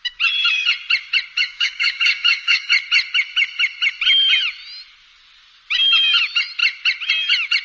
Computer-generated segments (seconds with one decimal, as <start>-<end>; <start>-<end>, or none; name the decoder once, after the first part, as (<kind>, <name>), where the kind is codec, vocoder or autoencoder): 1.4-2.7 (codec, DAC)